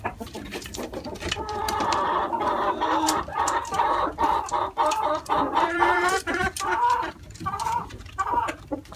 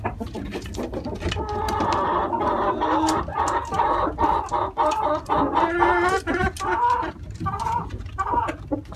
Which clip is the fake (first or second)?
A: first